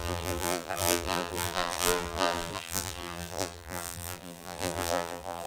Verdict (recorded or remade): remade